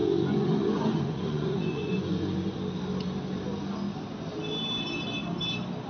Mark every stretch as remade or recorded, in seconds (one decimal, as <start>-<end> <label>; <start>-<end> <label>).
0.0-2.6 remade; 2.6-5.9 recorded